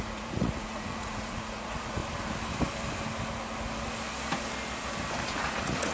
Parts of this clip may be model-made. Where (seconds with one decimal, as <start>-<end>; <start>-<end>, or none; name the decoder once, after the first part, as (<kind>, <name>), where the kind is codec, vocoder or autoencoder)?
0.0-2.0 (vocoder, Vocos); 5.2-5.9